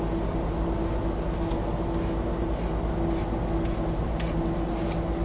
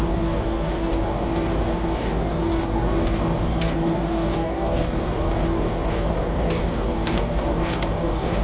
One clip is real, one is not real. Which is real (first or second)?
first